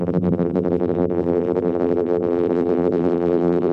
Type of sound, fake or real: fake